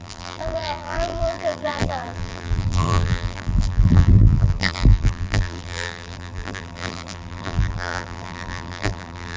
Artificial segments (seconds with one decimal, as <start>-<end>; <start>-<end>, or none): 0.0-9.4